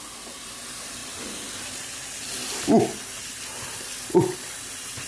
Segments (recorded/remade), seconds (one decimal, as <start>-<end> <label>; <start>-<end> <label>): 0.0-5.1 recorded